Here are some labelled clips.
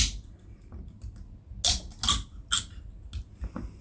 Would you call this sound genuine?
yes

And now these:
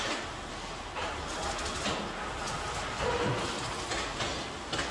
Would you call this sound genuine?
yes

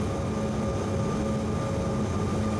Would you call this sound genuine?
yes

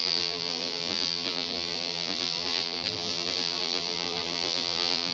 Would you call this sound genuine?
no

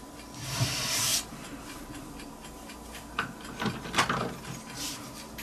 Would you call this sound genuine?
yes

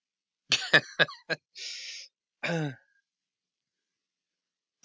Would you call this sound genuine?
yes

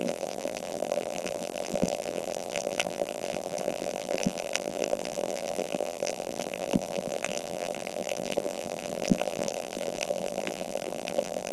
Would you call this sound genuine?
no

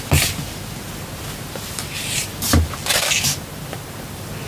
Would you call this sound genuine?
yes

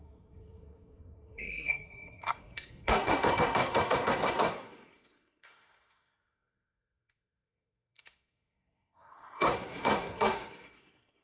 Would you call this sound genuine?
no